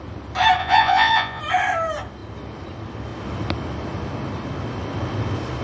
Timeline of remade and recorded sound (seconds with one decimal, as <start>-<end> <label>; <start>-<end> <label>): 0.0-0.6 recorded; 0.6-1.4 remade; 1.4-5.6 recorded